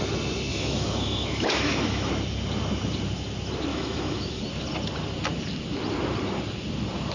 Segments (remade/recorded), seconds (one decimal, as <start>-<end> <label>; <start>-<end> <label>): 0.0-0.5 recorded; 0.5-2.1 remade; 2.1-3.7 recorded; 3.7-4.4 remade; 4.4-7.1 recorded